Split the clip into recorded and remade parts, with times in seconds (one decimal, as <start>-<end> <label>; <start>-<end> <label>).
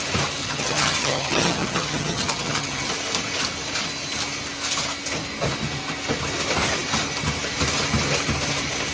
0.0-0.4 recorded; 0.4-2.9 remade; 2.9-8.9 recorded